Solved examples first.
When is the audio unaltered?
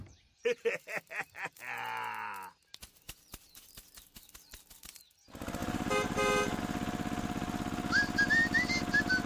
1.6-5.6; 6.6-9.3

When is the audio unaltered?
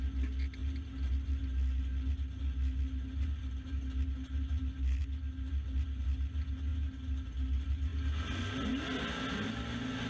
0.0-10.1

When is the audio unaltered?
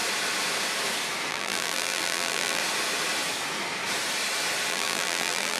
0.0-1.3; 2.6-4.7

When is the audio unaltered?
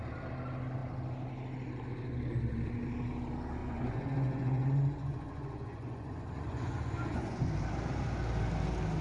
0.0-3.6; 7.5-9.0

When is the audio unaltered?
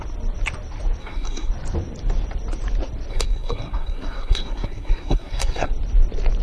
0.0-1.0; 1.5-3.1; 5.7-6.4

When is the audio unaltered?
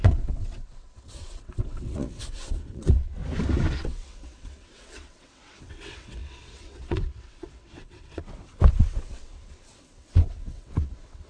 3.2-3.8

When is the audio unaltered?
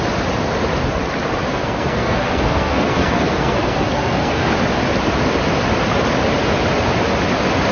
0.0-1.5; 4.5-7.7